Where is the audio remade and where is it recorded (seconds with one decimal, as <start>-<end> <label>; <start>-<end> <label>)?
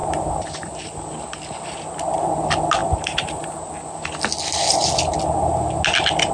0.0-6.3 recorded